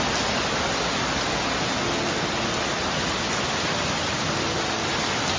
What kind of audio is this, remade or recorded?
recorded